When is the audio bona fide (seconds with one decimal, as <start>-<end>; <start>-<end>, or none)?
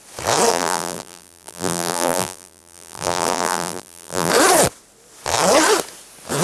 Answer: 0.0-0.5; 4.3-6.4